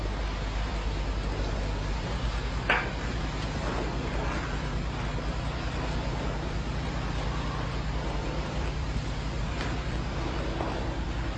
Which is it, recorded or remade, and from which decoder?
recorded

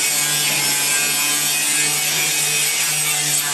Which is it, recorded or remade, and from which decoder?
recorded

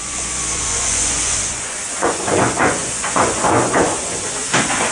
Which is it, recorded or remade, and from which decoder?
remade, vocoder, Vocos